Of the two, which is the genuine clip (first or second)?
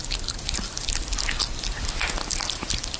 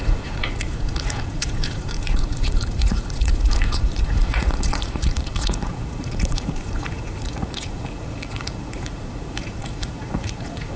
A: first